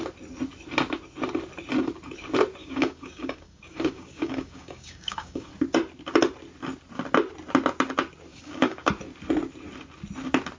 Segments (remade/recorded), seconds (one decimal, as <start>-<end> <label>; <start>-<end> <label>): 0.0-2.6 recorded; 2.6-5.5 remade; 5.5-8.3 recorded; 8.3-8.9 remade; 8.9-10.6 recorded